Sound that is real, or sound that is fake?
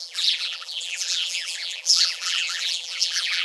fake